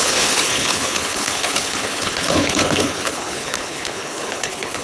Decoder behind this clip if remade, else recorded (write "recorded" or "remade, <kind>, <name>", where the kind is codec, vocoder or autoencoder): remade, codec, HILCodec